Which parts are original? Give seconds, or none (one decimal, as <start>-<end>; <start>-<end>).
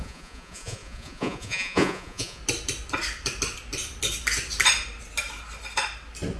2.4-6.4